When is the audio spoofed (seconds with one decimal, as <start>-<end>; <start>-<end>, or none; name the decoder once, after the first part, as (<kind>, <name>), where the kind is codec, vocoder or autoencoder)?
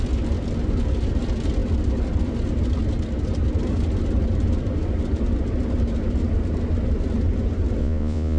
7.8-8.4 (vocoder, Vocos)